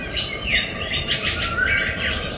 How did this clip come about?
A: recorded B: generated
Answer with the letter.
A